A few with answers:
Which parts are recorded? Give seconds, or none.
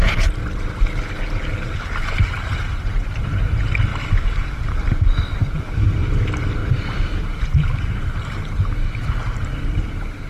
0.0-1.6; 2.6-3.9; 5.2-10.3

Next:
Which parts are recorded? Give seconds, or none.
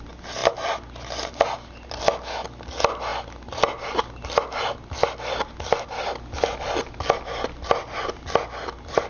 0.0-9.1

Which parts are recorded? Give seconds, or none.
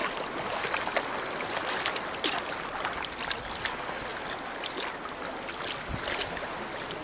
0.0-7.0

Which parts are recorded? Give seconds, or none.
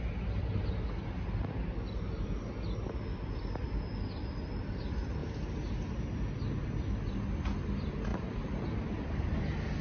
0.0-9.8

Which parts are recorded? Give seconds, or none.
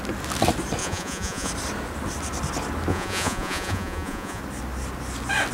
0.0-0.8; 1.5-2.9; 4.4-5.5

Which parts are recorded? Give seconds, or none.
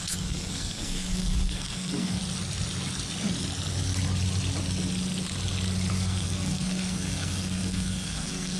2.2-5.9